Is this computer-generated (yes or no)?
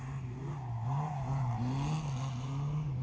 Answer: no